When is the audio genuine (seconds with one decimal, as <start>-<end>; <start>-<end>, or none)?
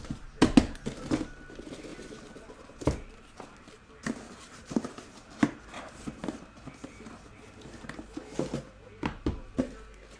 0.0-10.2